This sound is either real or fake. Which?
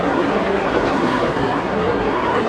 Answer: fake